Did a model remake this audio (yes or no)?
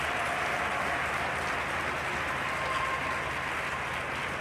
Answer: no